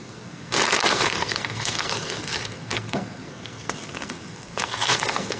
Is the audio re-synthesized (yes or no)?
yes